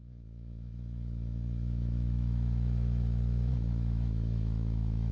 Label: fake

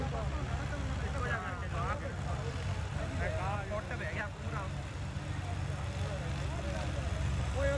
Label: real